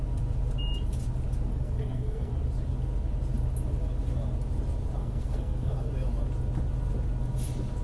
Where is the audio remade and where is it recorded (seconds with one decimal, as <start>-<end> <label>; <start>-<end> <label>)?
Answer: 0.0-1.5 recorded; 1.5-2.3 remade; 2.3-5.0 recorded; 5.0-5.9 remade; 5.9-7.8 recorded